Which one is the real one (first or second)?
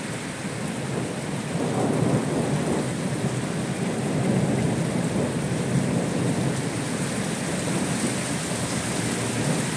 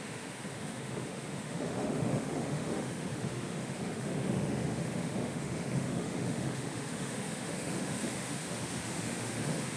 first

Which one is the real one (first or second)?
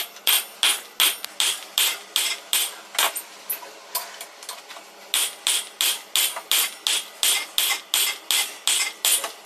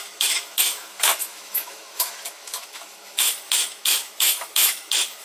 first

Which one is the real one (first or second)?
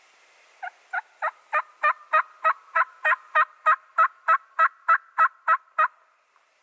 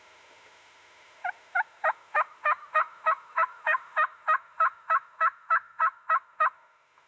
first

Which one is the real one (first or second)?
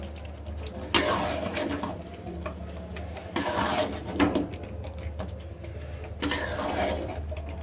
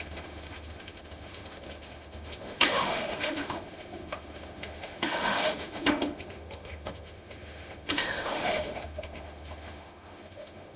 first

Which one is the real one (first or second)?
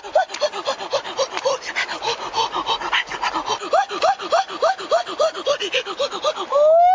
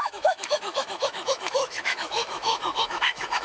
first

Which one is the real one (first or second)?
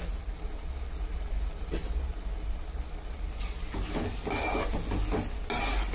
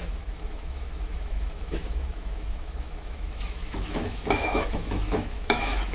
first